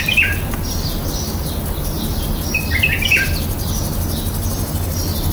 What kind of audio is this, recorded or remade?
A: recorded